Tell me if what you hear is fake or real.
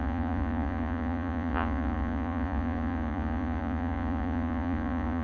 fake